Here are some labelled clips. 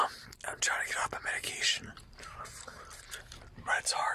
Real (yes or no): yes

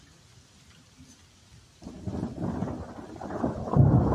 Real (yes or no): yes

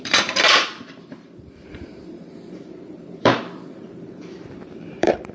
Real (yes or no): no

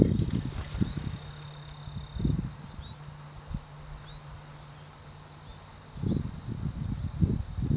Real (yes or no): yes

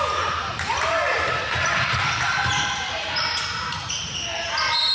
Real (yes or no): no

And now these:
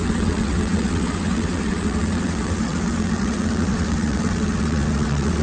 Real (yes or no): no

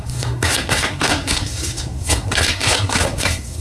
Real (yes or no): no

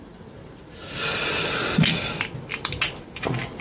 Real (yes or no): yes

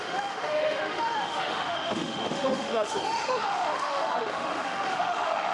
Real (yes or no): no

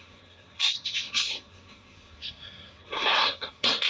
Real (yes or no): no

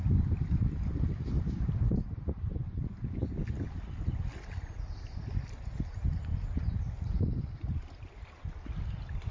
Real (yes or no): yes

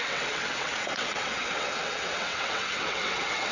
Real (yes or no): no